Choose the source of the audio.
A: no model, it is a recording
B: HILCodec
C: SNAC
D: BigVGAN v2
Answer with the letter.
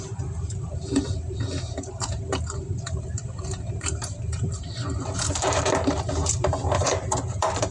D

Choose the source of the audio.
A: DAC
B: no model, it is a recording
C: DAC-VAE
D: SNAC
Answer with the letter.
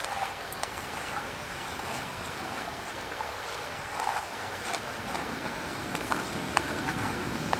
D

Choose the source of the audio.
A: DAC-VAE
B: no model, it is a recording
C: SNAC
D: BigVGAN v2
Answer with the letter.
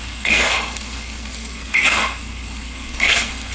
C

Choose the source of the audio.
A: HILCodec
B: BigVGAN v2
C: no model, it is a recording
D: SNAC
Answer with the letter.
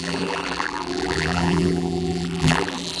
B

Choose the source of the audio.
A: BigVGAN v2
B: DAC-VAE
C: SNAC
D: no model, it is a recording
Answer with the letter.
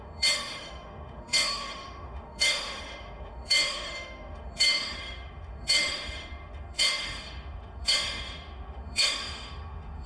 B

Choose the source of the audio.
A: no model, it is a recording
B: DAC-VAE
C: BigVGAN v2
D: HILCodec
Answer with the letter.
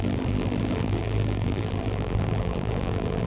C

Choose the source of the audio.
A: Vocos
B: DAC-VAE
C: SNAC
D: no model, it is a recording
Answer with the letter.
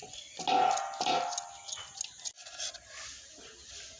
D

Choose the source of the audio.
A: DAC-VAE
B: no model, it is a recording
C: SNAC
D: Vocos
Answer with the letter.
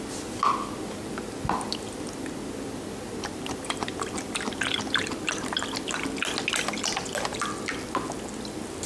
B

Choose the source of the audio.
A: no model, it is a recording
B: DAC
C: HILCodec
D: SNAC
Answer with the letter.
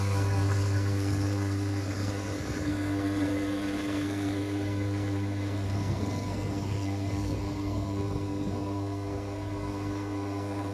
D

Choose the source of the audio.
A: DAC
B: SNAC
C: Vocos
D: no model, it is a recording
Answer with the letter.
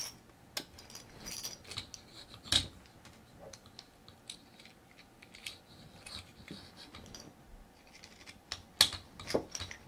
D